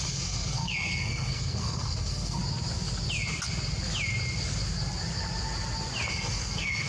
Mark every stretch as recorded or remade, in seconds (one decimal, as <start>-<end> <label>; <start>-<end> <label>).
0.0-2.4 remade; 2.4-6.1 recorded; 6.1-6.9 remade